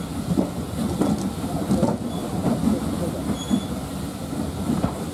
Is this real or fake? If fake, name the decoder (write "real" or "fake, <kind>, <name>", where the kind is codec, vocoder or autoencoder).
real